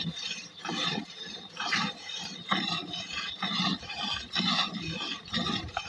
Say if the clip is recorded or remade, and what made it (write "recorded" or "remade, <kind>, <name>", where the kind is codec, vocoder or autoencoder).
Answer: remade, vocoder, BigVGAN v2